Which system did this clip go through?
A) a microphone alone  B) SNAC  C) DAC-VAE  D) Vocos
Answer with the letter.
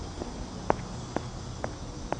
A